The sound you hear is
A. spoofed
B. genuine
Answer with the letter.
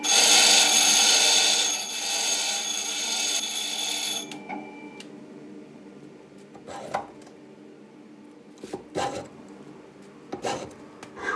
B